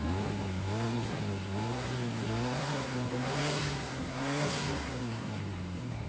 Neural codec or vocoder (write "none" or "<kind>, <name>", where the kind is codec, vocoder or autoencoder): codec, SNAC